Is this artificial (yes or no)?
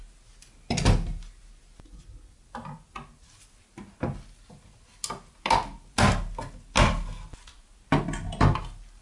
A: no